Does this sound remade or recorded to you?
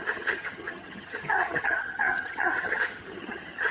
remade